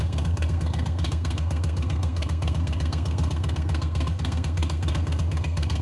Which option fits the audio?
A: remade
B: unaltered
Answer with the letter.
A